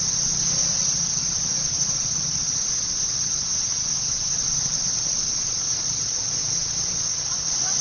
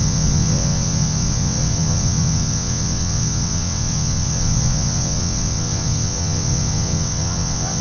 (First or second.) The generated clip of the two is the second